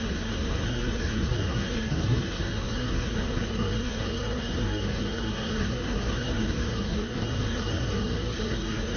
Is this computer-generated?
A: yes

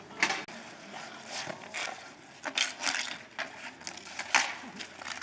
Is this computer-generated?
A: no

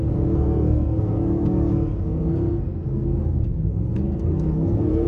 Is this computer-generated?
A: yes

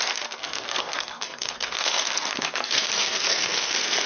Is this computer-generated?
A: yes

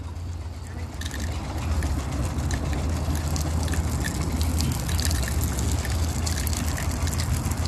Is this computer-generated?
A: no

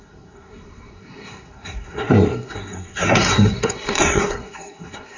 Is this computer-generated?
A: yes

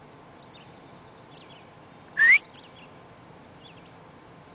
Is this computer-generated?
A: no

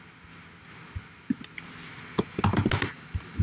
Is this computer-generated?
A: no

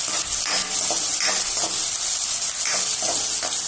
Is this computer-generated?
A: no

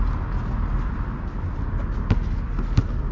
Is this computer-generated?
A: no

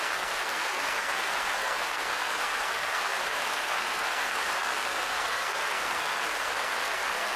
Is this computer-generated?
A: yes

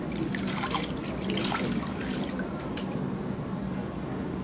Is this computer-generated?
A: no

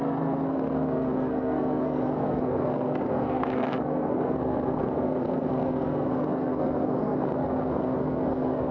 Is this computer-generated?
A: yes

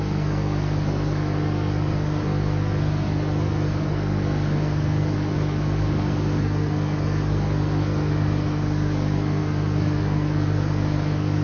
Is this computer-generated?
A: yes